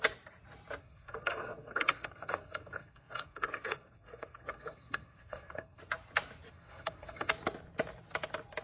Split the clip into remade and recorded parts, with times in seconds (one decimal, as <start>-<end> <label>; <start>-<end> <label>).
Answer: 0.0-0.8 recorded; 0.8-5.8 remade; 5.8-6.5 recorded; 6.5-7.3 remade; 7.3-8.6 recorded